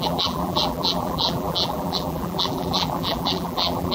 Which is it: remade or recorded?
remade